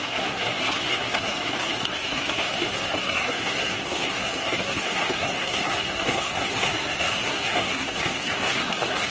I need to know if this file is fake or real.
fake